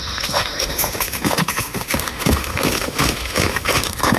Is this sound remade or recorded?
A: remade